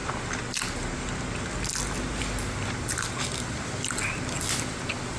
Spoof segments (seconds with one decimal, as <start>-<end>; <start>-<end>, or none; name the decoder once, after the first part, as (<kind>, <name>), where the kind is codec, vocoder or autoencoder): none